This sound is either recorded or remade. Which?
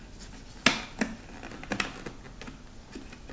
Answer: recorded